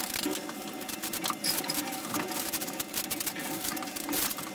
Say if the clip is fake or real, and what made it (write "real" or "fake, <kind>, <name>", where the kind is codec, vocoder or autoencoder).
real